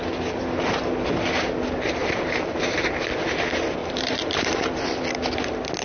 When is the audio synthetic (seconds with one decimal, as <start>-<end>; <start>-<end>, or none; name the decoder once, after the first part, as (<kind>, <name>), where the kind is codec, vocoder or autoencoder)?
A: 2.0-3.1 (vocoder, BigVGAN v2); 3.8-5.0